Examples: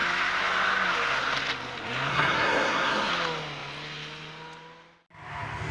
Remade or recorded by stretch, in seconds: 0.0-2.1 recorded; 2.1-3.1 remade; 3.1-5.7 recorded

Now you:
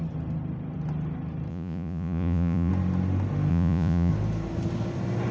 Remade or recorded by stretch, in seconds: 0.0-1.5 recorded; 1.5-2.7 remade; 2.7-3.5 recorded; 3.5-4.1 remade; 4.1-5.3 recorded

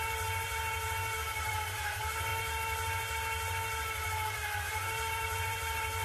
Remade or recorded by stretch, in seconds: 0.0-2.3 remade; 2.3-4.6 recorded; 4.6-6.0 remade

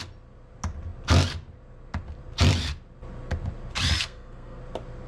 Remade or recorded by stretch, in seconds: 0.0-4.0 recorded; 4.0-4.6 remade; 4.6-5.1 recorded

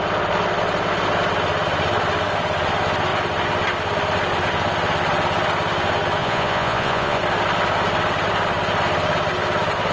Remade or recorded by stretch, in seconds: 0.0-6.2 recorded; 6.2-7.2 remade; 7.2-9.9 recorded

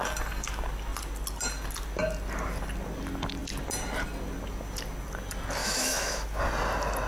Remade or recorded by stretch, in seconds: 0.0-5.6 recorded; 5.6-6.4 remade; 6.4-7.1 recorded

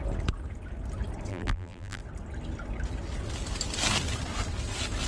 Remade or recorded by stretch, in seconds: 0.0-1.3 recorded; 1.3-2.0 remade; 2.0-5.1 recorded

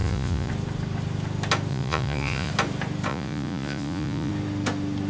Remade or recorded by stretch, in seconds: 0.0-0.5 remade; 0.5-1.7 recorded; 1.7-2.5 remade; 2.5-3.1 recorded; 3.1-4.3 remade; 4.3-5.1 recorded